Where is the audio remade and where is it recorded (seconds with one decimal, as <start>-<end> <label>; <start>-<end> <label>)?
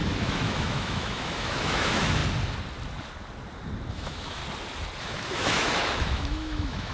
0.0-2.2 remade; 2.2-3.9 recorded; 3.9-4.4 remade; 4.4-5.0 recorded; 5.0-6.9 remade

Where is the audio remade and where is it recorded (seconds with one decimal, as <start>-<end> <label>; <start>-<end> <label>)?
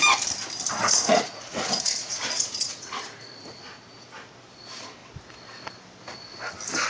0.0-0.8 recorded; 0.8-3.7 remade; 3.7-6.9 recorded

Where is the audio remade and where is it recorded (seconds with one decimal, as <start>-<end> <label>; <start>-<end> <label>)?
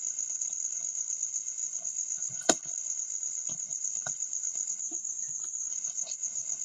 0.0-4.8 remade; 4.8-5.7 recorded; 5.7-6.6 remade